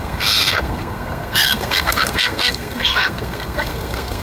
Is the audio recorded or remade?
remade